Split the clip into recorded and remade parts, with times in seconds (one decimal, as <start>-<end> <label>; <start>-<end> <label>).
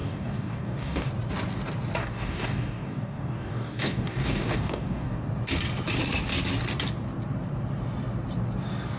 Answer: 0.0-1.1 remade; 1.1-2.0 recorded; 2.0-5.2 remade; 5.2-9.0 recorded